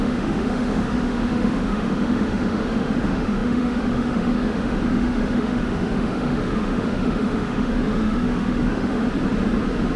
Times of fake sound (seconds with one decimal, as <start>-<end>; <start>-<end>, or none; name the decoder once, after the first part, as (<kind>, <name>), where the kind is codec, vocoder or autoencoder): 0.0-9.0 (autoencoder, DAC-VAE)